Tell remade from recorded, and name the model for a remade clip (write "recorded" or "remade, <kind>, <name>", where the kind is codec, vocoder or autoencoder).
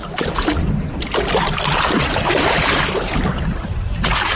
recorded